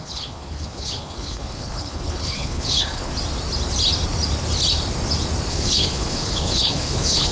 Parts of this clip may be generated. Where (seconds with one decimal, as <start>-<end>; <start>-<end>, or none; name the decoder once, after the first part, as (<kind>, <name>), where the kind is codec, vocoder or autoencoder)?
0.0-3.1 (codec, HILCodec); 5.5-7.3